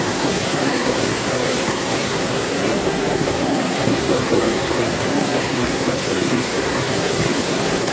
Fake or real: fake